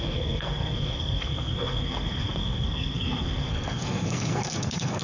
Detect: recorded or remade remade